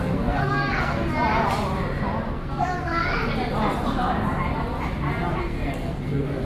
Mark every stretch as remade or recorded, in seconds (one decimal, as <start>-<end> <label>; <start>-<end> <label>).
0.0-1.0 remade; 1.0-2.3 recorded; 2.3-3.2 remade; 3.2-5.3 recorded; 5.3-6.4 remade